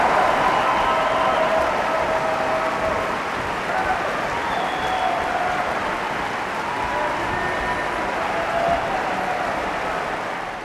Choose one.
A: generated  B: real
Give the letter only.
B